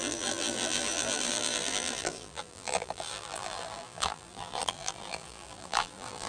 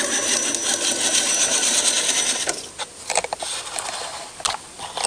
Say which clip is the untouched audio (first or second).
second